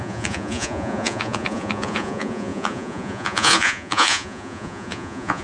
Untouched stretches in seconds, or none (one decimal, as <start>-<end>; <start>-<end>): none